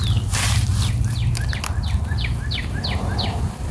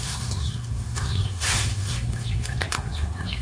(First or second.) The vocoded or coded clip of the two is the second